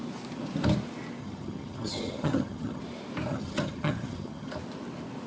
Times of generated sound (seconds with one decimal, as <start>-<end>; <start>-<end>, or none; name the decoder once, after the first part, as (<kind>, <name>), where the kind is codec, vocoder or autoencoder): 1.2-2.8 (vocoder, HiFi-GAN); 3.3-4.5